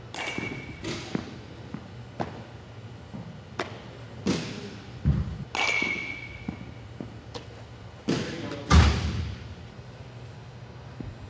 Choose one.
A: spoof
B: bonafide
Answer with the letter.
B